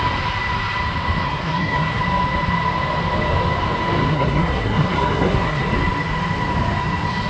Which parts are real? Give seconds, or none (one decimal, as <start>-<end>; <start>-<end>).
0.0-1.2; 2.0-4.1; 5.6-7.3